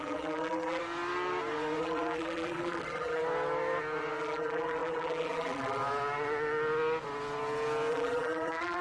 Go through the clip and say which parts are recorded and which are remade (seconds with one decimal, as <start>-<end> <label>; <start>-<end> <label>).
0.0-0.8 remade; 0.8-1.8 recorded; 1.8-3.2 remade; 3.2-4.2 recorded; 4.2-5.8 remade; 5.8-7.9 recorded; 7.9-8.8 remade

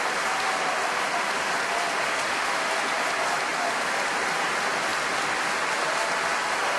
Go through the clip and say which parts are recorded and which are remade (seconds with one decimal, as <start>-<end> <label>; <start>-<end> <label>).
0.0-3.5 recorded; 3.5-4.1 remade; 4.1-4.9 recorded; 4.9-5.8 remade; 5.8-6.8 recorded

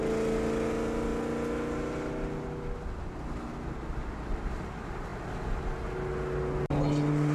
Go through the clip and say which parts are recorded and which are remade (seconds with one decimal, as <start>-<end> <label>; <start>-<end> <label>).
0.0-7.3 recorded

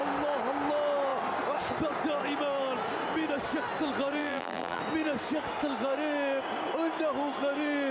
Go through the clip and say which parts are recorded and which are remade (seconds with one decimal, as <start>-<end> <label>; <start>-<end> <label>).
0.0-4.2 recorded; 4.2-4.8 remade; 4.8-7.9 recorded

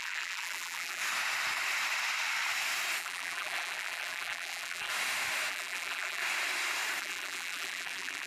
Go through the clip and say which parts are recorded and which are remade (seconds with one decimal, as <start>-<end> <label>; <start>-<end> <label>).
0.0-1.0 remade; 1.0-3.0 recorded; 3.0-4.9 remade; 4.9-5.5 recorded; 5.5-6.2 remade; 6.2-7.0 recorded; 7.0-8.3 remade

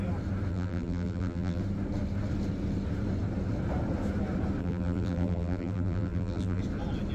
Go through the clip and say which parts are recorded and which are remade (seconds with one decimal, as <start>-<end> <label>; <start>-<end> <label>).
0.0-0.5 recorded; 0.5-1.6 remade; 1.6-4.6 recorded; 4.6-6.6 remade; 6.6-7.1 recorded

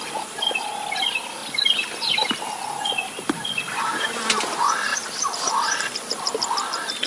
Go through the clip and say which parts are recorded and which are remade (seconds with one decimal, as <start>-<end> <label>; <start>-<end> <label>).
0.0-4.9 recorded; 4.9-7.1 remade

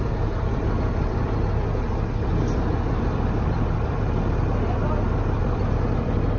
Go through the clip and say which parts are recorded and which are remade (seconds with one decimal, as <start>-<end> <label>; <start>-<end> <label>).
0.0-1.6 remade; 1.6-5.4 recorded; 5.4-6.4 remade